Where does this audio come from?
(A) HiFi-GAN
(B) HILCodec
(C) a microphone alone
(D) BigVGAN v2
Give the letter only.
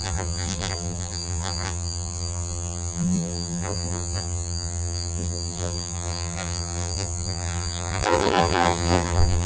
D